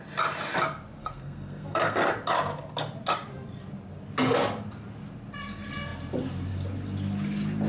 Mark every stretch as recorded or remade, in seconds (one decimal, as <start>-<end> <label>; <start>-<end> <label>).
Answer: 0.0-1.0 recorded; 1.0-2.0 remade; 2.0-7.7 recorded